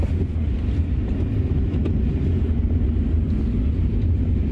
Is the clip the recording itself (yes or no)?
yes